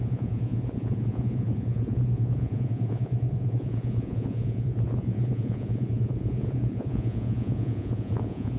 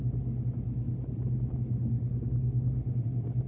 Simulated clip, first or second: first